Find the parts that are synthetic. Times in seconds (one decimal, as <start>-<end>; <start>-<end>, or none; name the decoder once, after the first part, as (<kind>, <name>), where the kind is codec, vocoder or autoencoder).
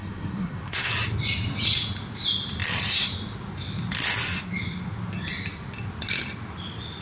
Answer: 0.0-0.9 (codec, SNAC)